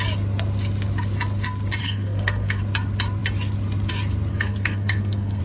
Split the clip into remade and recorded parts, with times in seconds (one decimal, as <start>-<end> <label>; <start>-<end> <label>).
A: 0.0-1.8 recorded; 1.8-2.6 remade; 2.6-4.3 recorded; 4.3-5.4 remade